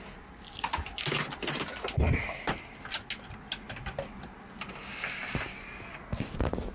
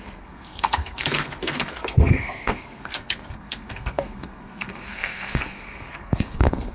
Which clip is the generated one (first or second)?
second